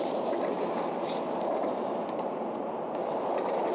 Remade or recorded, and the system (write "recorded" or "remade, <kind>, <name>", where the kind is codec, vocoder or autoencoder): remade, vocoder, BigVGAN v2